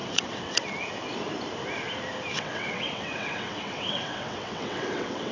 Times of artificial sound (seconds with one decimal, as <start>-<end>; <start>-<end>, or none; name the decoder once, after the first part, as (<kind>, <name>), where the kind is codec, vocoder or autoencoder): 0.0-0.6 (vocoder, WaveNeXt); 2.3-5.3